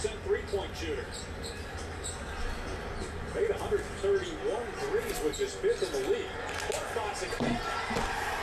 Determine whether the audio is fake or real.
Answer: real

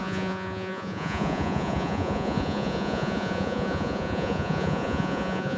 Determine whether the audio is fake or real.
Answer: fake